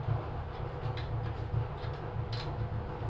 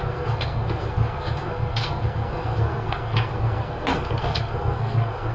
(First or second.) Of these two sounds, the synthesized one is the second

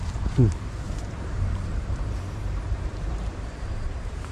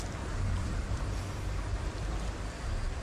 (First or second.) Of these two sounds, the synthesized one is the first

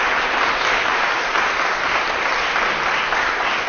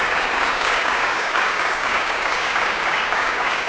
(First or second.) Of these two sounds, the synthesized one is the second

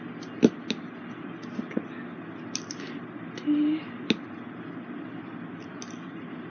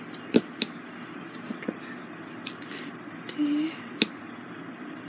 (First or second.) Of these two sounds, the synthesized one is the second